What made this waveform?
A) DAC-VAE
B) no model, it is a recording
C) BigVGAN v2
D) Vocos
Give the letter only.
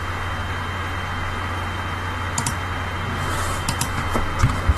B